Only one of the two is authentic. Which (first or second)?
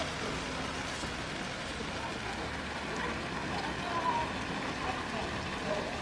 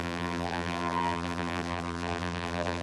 first